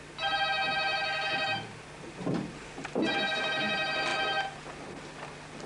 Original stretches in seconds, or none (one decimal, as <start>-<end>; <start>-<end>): 0.0-5.7